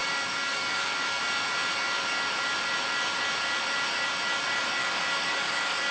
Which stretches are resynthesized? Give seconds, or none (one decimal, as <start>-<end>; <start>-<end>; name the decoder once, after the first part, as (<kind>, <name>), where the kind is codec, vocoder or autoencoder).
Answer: 0.0-1.2 (codec, DAC); 4.8-5.9